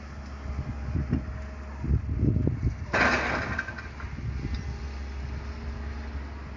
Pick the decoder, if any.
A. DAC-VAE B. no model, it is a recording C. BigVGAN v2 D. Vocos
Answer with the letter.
B